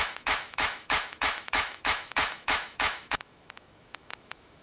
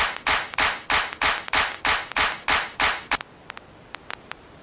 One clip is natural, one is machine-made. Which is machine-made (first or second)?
first